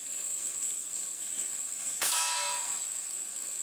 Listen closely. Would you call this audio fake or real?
fake